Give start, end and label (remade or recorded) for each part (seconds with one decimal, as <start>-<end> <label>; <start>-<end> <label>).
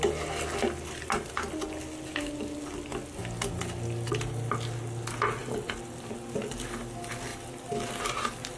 0.0-2.1 recorded; 2.1-2.7 remade; 2.7-5.4 recorded; 5.4-6.2 remade; 6.2-8.6 recorded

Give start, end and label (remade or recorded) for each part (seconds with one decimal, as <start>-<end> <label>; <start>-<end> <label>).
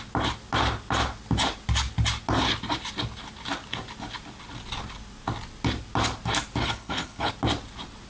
0.0-6.6 recorded; 6.6-7.3 remade; 7.3-8.1 recorded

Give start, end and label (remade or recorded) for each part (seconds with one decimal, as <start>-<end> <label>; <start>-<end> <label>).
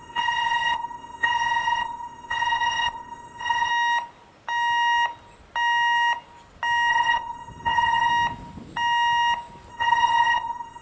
0.0-3.7 remade; 3.7-6.9 recorded; 6.9-8.1 remade; 8.1-9.7 recorded; 9.7-10.8 remade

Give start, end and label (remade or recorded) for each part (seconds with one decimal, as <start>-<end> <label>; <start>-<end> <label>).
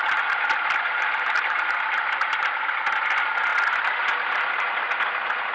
0.0-5.5 recorded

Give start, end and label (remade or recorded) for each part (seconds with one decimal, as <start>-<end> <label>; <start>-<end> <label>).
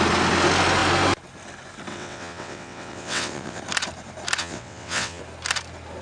0.0-1.9 recorded; 1.9-3.6 remade; 3.6-4.4 recorded; 4.4-5.2 remade; 5.2-6.0 recorded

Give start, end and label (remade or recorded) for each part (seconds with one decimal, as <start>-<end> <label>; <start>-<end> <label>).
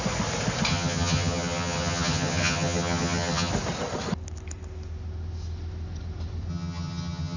0.0-0.7 recorded; 0.7-3.5 remade; 3.5-6.5 recorded; 6.5-7.4 remade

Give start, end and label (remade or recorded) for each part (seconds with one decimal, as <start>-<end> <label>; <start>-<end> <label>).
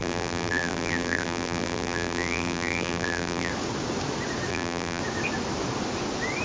0.0-3.5 remade; 3.5-4.5 recorded; 4.5-5.0 remade; 5.0-6.4 recorded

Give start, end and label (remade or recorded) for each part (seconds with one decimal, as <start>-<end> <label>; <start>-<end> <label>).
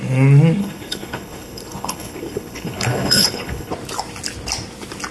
0.0-0.6 recorded; 0.6-3.7 remade; 3.7-5.1 recorded